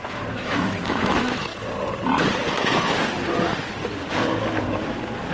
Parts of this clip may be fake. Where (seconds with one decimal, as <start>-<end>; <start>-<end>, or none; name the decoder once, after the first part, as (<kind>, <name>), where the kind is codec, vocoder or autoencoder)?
0.0-1.5 (autoencoder, DAC-VAE); 4.7-5.3